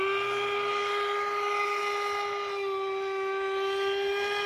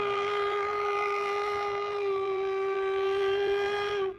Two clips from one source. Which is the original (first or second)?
first